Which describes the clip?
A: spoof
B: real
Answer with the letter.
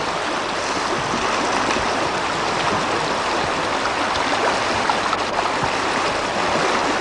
B